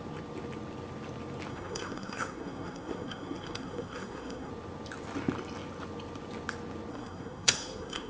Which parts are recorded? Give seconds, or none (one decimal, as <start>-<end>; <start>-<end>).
0.0-1.5; 4.5-6.9